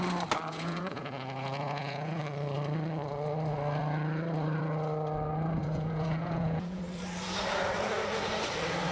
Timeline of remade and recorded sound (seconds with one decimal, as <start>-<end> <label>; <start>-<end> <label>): 0.0-0.5 recorded; 0.5-2.2 remade; 2.2-5.6 recorded; 5.6-6.8 remade; 6.8-8.9 recorded